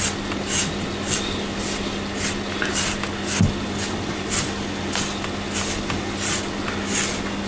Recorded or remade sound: recorded